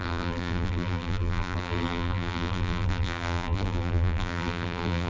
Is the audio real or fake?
fake